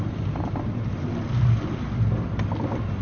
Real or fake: real